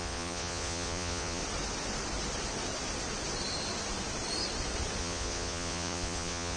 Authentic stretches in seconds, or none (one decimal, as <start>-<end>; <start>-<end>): 1.4-5.0